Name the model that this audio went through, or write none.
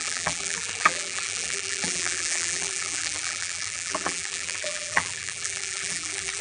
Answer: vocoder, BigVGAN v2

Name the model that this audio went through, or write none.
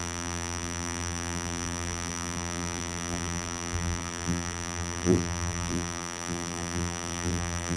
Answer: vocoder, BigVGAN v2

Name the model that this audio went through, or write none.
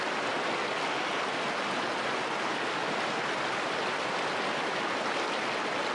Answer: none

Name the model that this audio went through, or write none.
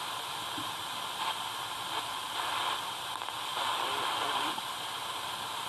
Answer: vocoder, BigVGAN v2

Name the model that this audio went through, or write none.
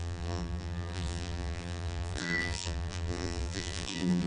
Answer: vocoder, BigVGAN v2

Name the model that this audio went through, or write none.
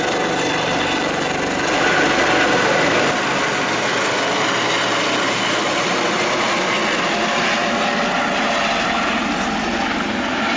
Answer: none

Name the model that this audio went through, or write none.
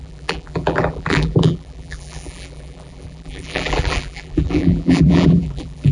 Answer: vocoder, BigVGAN v2